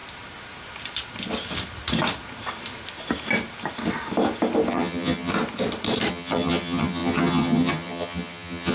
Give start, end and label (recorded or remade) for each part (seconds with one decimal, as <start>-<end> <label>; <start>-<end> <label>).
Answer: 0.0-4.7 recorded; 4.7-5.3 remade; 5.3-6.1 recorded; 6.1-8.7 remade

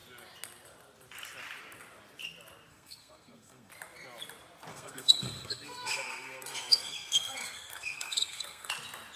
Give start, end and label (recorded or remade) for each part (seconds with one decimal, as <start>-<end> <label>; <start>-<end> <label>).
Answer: 0.0-2.7 recorded; 2.7-3.7 remade; 3.7-4.7 recorded; 4.7-8.7 remade; 8.7-9.2 recorded

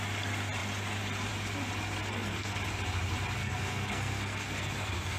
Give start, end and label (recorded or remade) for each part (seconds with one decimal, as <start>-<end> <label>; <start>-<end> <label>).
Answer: 0.0-2.1 recorded; 2.1-2.6 remade; 2.6-3.4 recorded; 3.4-5.2 remade

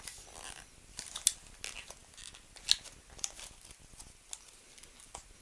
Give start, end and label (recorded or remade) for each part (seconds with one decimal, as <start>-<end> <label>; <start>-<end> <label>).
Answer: 0.0-5.4 recorded

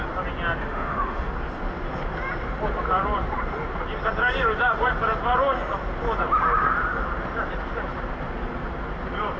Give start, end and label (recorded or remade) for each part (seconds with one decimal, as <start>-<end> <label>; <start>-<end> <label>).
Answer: 0.0-0.6 recorded; 0.6-1.3 remade; 1.3-9.4 recorded